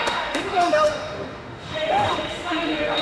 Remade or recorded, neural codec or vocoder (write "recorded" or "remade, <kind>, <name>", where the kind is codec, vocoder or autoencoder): remade, autoencoder, DAC-VAE